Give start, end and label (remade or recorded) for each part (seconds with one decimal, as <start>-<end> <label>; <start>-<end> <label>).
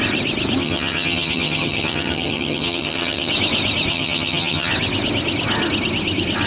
0.0-0.6 recorded; 0.6-3.3 remade; 3.3-3.9 recorded; 3.9-4.7 remade; 4.7-6.5 recorded